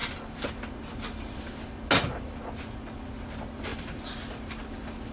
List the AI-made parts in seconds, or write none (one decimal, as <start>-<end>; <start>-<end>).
none